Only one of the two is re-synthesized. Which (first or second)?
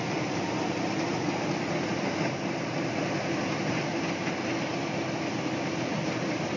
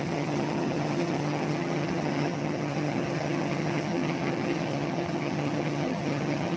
second